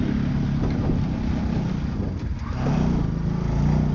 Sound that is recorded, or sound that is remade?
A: recorded